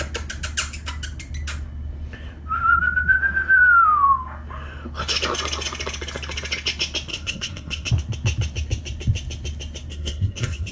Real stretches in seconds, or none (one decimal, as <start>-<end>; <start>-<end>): 0.0-7.1; 7.9-9.9

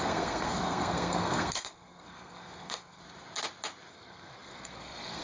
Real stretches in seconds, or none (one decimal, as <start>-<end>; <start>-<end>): 3.0-3.9

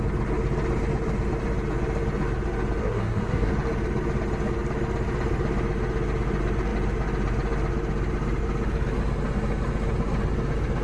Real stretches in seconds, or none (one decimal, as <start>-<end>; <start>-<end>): 0.0-2.8; 3.5-10.8